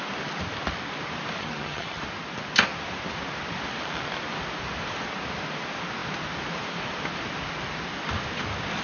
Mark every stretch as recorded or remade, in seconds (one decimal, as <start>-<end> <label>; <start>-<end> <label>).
0.0-1.4 recorded; 1.4-2.0 remade; 2.0-8.8 recorded